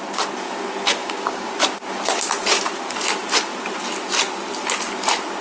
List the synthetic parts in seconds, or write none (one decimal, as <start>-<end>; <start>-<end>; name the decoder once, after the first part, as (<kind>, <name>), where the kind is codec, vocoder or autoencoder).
1.0-1.5 (codec, DAC)